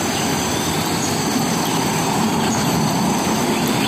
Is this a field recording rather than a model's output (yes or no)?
yes